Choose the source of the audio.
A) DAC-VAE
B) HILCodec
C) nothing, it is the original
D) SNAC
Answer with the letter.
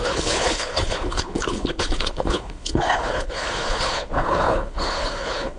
B